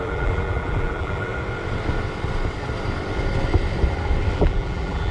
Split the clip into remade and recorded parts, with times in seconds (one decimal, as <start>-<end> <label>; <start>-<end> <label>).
0.0-1.3 remade; 1.3-4.3 recorded; 4.3-5.1 remade